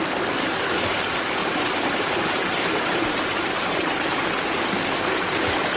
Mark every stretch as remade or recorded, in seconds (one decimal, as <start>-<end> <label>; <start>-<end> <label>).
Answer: 0.0-1.4 recorded; 1.4-4.4 remade; 4.4-5.8 recorded